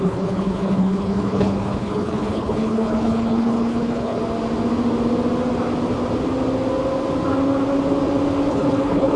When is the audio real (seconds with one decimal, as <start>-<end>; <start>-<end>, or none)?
4.2-8.5

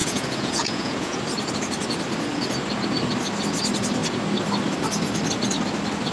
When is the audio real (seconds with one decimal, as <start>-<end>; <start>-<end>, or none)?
1.2-6.1

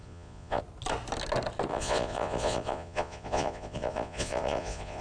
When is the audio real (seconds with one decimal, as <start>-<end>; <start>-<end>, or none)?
0.6-1.7

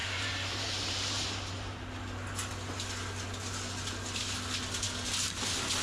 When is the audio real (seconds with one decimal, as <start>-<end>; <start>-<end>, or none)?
1.7-5.8

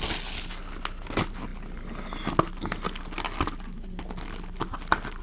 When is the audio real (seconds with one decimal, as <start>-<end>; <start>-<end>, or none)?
0.0-5.2

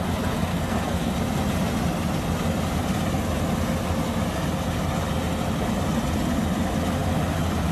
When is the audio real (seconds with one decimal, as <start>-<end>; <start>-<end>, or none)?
0.0-0.5; 1.1-7.7